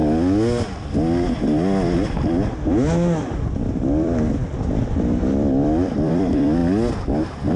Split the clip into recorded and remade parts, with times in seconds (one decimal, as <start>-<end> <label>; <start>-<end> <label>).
0.0-3.3 recorded; 3.3-6.6 remade; 6.6-7.6 recorded